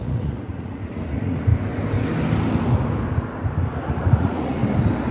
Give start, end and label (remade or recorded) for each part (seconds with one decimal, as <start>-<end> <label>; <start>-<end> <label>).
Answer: 0.0-1.5 remade; 1.5-3.8 recorded; 3.8-4.6 remade; 4.6-5.1 recorded